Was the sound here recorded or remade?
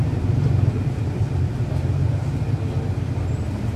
recorded